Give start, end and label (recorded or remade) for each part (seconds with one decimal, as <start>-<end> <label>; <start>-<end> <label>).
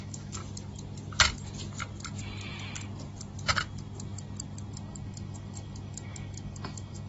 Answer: 0.0-0.4 remade; 0.4-4.7 recorded; 4.7-7.1 remade